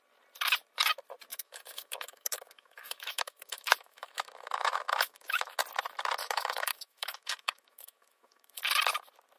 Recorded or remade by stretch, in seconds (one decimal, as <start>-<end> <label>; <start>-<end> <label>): 0.0-1.3 recorded; 1.3-5.6 remade; 5.6-6.2 recorded; 6.2-8.6 remade; 8.6-9.4 recorded